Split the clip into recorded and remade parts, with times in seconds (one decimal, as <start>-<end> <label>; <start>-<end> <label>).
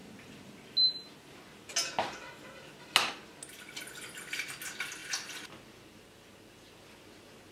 0.0-7.5 recorded